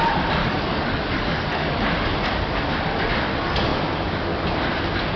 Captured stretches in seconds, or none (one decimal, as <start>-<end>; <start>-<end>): 0.0-0.4; 1.9-5.2